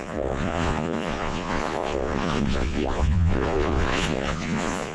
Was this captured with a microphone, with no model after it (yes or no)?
no